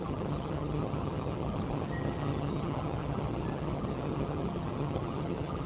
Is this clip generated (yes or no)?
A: yes